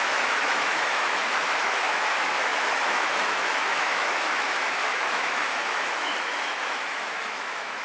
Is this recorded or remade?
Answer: remade